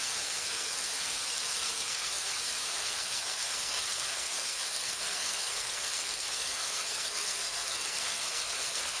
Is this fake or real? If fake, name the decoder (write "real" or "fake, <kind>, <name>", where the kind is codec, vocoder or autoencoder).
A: fake, codec, SNAC